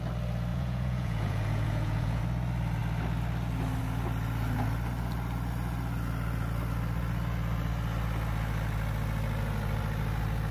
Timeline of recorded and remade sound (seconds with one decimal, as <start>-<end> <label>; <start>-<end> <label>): 0.0-0.5 recorded; 0.5-2.2 remade; 2.2-10.5 recorded